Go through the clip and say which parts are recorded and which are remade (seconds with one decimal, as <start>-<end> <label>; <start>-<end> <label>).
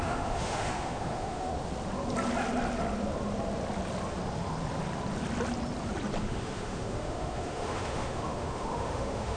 0.0-1.5 remade; 1.5-6.2 recorded; 6.2-9.4 remade